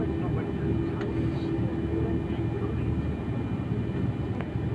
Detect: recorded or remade recorded